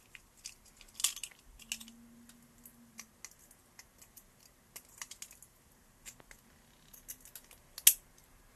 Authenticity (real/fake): real